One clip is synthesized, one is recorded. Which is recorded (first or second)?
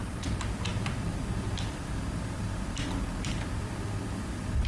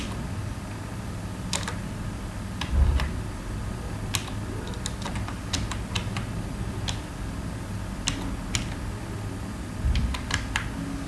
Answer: second